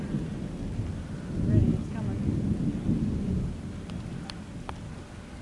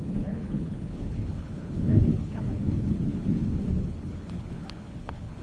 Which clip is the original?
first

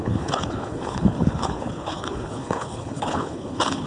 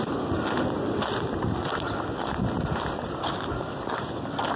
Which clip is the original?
second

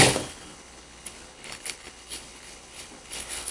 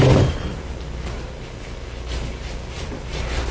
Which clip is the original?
second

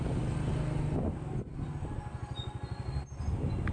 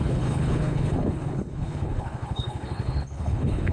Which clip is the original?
first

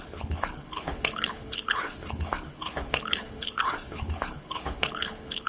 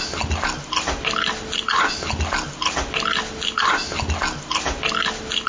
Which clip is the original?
second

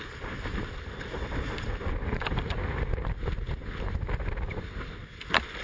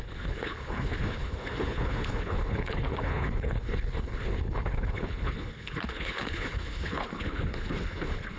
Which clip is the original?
first